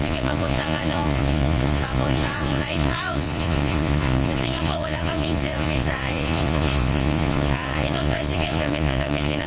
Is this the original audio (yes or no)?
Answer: no